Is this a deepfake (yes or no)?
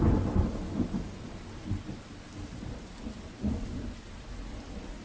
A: no